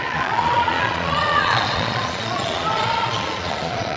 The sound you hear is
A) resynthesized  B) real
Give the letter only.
A